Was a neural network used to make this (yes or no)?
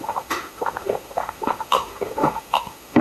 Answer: yes